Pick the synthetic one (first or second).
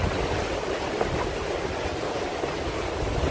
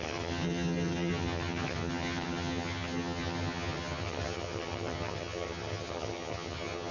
second